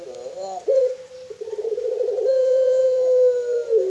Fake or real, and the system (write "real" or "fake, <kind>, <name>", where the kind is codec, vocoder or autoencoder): fake, vocoder, BigVGAN v2